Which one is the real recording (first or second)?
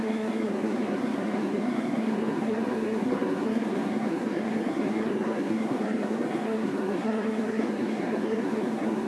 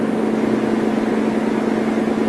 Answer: second